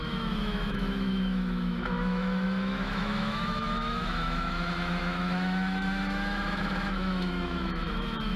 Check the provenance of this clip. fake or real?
fake